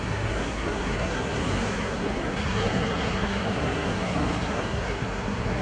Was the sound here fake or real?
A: fake